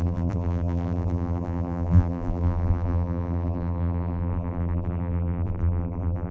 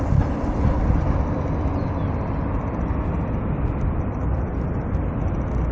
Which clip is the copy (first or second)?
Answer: first